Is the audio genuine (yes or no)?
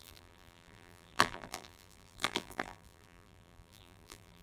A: no